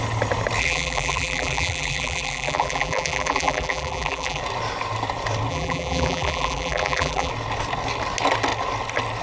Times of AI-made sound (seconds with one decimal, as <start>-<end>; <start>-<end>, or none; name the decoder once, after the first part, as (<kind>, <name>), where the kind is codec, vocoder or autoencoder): 0.6-4.4 (vocoder, BigVGAN v2); 5.5-7.3

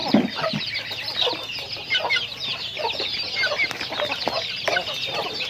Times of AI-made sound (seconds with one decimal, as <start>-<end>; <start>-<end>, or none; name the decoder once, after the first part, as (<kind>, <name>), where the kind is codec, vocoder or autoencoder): 0.0-0.6 (vocoder, BigVGAN v2)

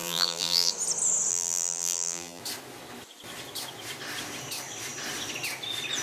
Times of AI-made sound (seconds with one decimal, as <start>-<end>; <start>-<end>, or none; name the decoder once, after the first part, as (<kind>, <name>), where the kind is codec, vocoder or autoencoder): 0.0-0.7 (vocoder, BigVGAN v2); 1.3-2.4